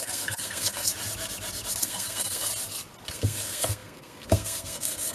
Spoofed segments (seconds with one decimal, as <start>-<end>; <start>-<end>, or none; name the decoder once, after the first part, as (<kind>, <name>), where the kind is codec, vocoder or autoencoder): 0.0-0.9 (codec, SNAC); 1.8-2.5; 3.1-5.1